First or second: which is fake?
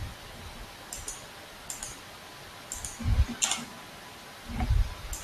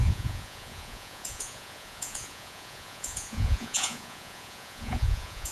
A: second